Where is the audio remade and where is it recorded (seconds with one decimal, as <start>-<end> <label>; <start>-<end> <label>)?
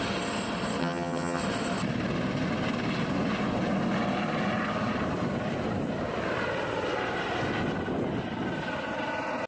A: 0.0-0.8 recorded; 0.8-1.4 remade; 1.4-9.5 recorded